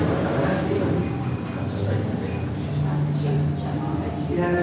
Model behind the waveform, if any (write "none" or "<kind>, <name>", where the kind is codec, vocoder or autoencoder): none